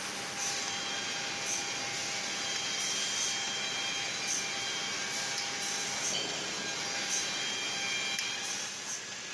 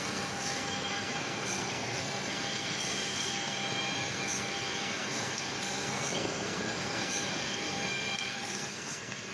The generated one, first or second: second